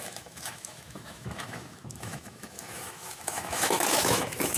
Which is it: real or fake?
fake